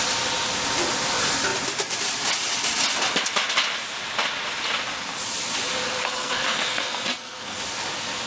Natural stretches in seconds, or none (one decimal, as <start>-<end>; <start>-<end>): 0.0-6.0; 7.6-8.3